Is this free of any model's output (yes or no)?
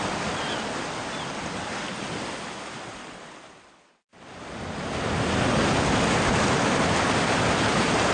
yes